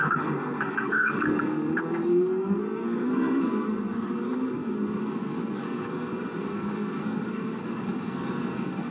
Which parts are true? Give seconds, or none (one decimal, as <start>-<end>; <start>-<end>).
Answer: none